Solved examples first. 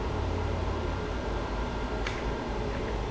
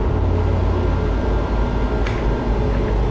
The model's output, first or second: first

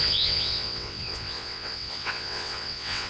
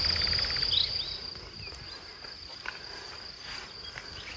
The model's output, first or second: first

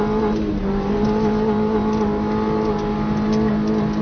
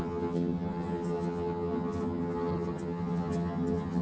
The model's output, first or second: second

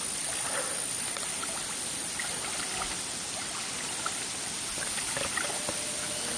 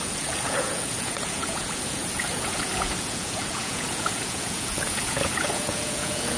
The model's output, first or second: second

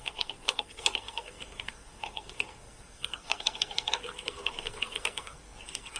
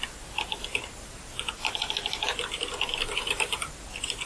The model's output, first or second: first